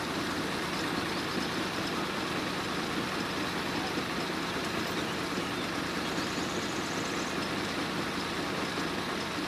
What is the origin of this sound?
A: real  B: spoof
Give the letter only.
A